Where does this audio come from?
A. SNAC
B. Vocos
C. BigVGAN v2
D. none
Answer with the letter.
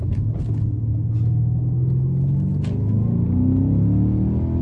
D